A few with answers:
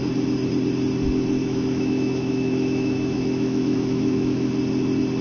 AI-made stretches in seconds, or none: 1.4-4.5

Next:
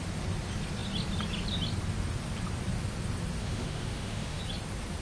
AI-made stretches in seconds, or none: 3.4-4.4

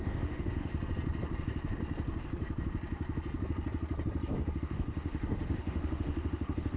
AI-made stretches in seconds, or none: 0.0-0.7; 4.6-6.8

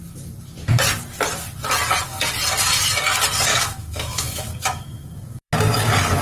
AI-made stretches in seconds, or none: 3.5-5.5

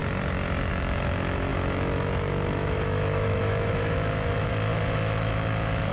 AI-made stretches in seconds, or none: 0.7-5.9

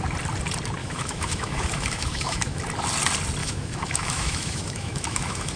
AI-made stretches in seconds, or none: 0.8-2.6; 3.4-5.6